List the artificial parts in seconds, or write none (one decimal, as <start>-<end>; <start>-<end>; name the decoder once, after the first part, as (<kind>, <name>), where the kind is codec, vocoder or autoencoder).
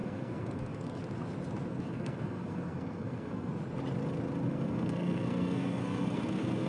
0.0-1.0 (codec, SNAC); 1.7-3.5; 4.5-6.7